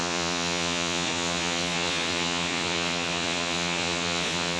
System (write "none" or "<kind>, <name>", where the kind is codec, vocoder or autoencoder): vocoder, Vocos